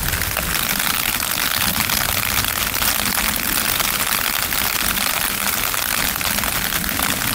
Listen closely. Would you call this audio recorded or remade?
recorded